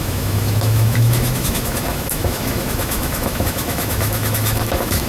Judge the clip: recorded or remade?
remade